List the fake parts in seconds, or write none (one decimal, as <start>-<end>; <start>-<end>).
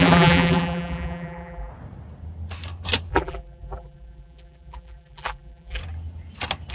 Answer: 0.0-1.7; 3.1-5.8